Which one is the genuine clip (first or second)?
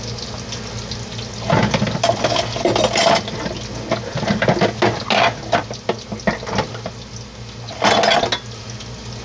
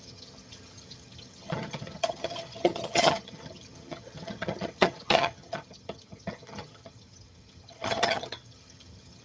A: first